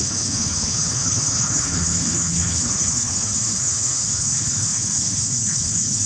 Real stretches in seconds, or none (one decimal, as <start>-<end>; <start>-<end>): none